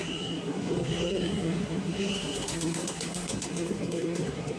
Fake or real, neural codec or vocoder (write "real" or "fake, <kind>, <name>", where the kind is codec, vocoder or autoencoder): fake, codec, SNAC